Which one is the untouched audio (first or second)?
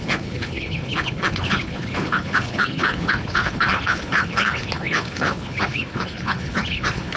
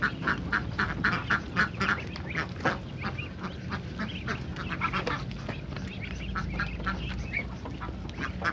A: second